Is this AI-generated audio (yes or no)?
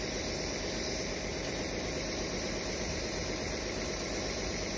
no